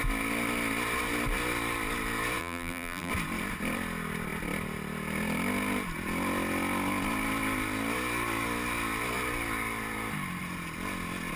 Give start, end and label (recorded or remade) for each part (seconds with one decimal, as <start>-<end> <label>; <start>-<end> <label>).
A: 0.0-2.4 recorded; 2.4-3.1 remade; 3.1-11.4 recorded